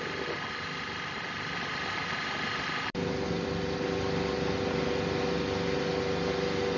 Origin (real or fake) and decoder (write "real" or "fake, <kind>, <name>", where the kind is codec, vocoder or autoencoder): real